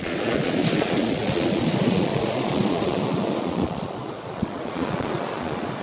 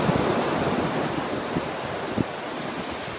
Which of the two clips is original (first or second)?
second